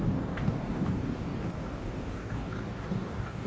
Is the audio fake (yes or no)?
yes